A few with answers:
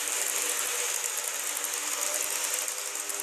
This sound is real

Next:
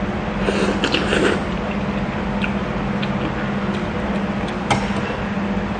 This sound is real